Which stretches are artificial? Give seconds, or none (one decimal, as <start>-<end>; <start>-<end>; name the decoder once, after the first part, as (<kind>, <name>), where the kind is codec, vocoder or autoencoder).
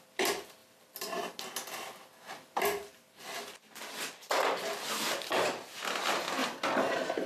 none